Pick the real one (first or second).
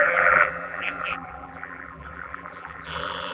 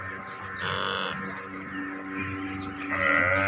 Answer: second